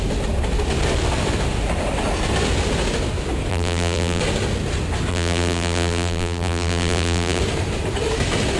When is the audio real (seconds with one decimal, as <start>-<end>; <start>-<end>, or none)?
0.0-3.5; 4.2-5.1; 7.4-8.6